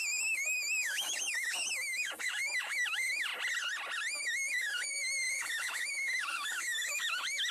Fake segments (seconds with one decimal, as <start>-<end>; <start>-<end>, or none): 0.0-3.3; 4.2-7.5